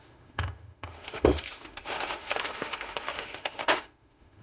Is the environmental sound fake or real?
fake